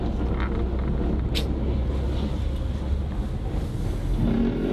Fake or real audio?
real